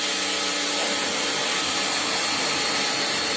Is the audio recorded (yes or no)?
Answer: yes